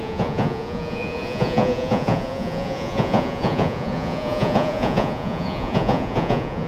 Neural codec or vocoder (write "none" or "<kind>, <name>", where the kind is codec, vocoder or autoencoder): vocoder, Vocos